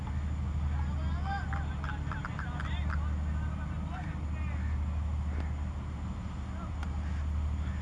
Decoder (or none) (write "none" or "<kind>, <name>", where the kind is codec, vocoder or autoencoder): none